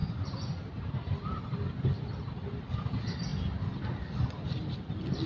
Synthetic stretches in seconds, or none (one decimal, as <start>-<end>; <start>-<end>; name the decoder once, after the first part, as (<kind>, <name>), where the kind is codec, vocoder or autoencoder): none

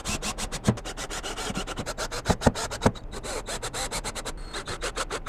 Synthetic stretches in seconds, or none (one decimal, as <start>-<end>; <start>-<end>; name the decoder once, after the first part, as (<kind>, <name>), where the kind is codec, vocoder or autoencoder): none